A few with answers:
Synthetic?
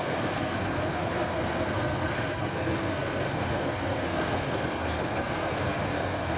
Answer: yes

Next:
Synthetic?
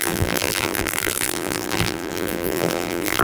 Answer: yes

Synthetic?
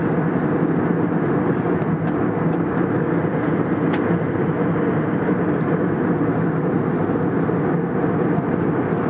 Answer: no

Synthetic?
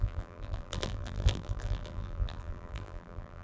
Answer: yes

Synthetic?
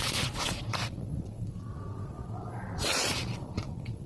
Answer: yes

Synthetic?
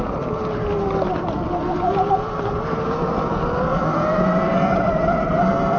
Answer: no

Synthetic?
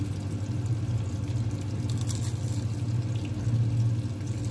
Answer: no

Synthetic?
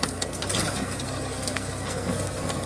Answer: yes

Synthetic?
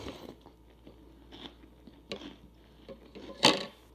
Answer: no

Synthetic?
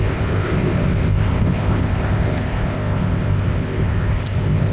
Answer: yes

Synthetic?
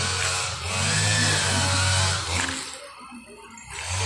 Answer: no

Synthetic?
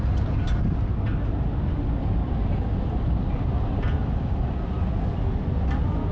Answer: no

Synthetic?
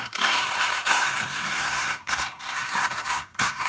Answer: yes